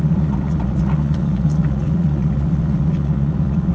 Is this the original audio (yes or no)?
no